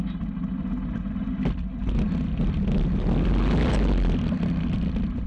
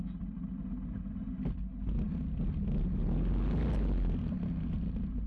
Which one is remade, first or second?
first